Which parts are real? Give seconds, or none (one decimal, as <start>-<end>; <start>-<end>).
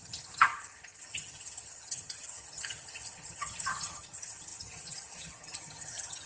none